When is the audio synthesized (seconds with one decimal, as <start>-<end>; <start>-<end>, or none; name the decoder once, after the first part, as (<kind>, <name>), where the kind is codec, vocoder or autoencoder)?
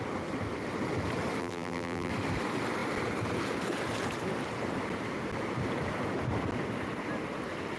1.4-2.1 (vocoder, BigVGAN v2)